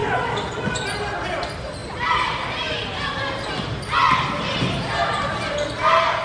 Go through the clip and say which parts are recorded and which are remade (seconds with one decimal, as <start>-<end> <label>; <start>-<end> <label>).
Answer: 0.0-1.8 recorded; 1.8-3.0 remade; 3.0-6.2 recorded